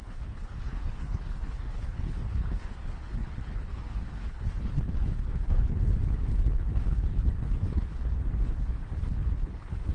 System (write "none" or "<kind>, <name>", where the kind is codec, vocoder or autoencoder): codec, HILCodec